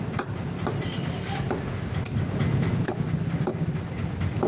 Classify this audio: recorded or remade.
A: recorded